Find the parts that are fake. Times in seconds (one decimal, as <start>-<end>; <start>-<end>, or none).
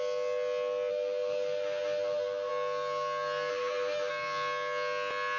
0.9-2.5; 3.5-4.1